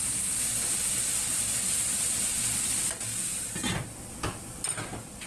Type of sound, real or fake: real